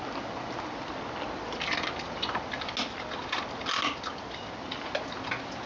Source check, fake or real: real